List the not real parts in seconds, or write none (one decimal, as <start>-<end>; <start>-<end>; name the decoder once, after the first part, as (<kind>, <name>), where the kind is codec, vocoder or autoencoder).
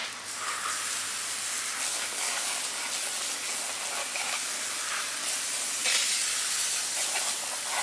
1.9-2.6 (codec, DAC); 4.0-4.6